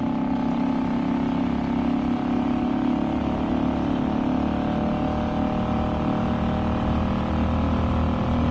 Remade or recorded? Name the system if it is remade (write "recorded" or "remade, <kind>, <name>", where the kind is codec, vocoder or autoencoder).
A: recorded